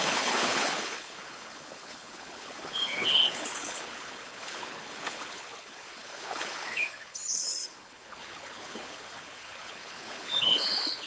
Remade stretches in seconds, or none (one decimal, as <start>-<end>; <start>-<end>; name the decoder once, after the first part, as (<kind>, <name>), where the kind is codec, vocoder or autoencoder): 0.0-11.1 (codec, HILCodec)